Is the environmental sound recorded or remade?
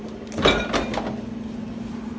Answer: recorded